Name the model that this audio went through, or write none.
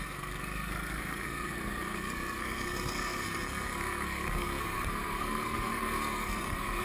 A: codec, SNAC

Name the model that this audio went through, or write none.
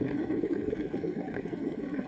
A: codec, SNAC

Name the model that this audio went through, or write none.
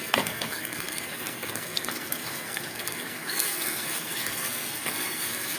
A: codec, SNAC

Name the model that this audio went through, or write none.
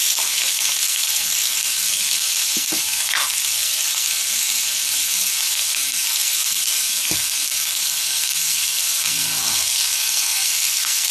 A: codec, SNAC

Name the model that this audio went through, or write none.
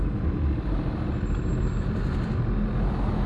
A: none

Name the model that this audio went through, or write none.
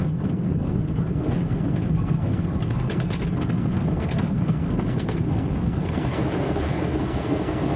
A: codec, SNAC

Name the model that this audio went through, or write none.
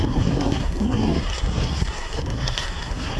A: codec, SNAC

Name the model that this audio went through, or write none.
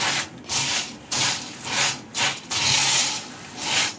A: none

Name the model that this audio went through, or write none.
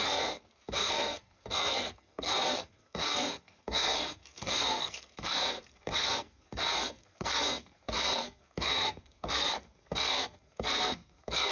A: codec, SNAC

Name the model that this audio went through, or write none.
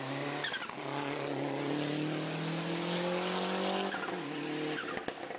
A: none